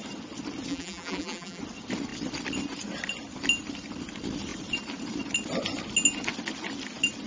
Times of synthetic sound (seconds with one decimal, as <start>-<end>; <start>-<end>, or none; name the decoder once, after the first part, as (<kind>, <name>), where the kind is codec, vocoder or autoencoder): 0.7-1.6 (vocoder, BigVGAN v2)